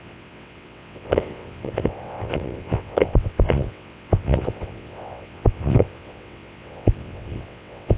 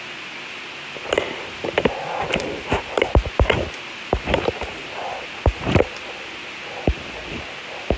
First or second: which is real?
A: second